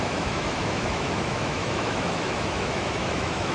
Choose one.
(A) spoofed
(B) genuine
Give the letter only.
A